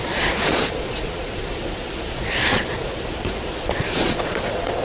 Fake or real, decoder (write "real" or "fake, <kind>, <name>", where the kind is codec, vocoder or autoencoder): fake, vocoder, Vocos